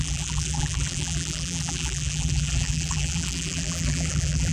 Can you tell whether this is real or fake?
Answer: fake